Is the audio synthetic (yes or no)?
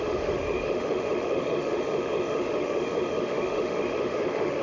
yes